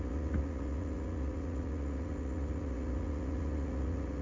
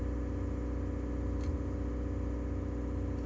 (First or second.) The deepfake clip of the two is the first